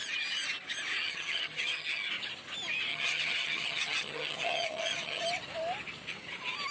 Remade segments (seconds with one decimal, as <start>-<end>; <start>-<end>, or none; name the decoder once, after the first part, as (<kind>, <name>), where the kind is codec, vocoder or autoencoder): 0.9-2.1 (vocoder, HiFi-GAN); 2.9-5.2